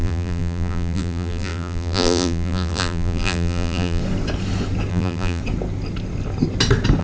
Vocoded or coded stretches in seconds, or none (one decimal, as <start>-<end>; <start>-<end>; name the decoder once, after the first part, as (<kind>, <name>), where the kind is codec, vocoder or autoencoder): 0.0-4.0 (vocoder, BigVGAN v2); 4.9-5.4